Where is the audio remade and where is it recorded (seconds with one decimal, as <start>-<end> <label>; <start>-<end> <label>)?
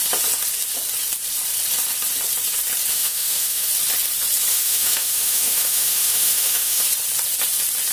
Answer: 0.0-2.9 recorded; 2.9-3.7 remade; 3.7-4.5 recorded; 4.5-6.8 remade; 6.8-7.9 recorded